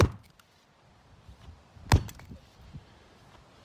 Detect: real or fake real